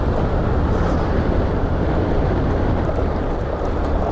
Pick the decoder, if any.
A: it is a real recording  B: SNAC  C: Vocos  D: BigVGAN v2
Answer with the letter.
D